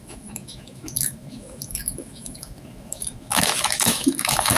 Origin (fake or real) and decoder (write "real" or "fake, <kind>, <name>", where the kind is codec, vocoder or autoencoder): fake, autoencoder, DAC-VAE